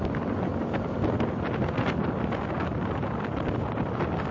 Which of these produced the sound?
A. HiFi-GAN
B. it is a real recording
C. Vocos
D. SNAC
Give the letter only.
B